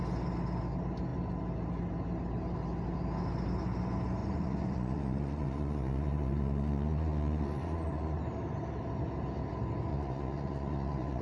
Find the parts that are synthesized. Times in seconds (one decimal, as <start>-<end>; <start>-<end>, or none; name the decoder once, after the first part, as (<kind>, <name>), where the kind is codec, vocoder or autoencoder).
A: 4.2-8.2 (vocoder, Vocos); 9.9-11.2